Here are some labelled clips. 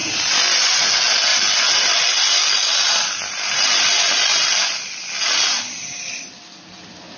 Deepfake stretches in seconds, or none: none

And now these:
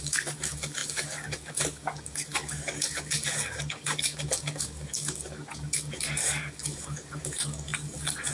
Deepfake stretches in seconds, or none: 0.0-8.3 (codec, DAC)